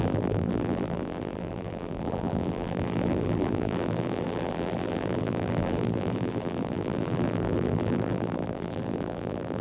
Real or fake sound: fake